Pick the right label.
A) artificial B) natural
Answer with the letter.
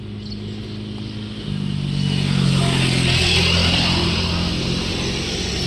B